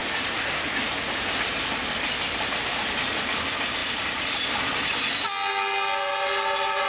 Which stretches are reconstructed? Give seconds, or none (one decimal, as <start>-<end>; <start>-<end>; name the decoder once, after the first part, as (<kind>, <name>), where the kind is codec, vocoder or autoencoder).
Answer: none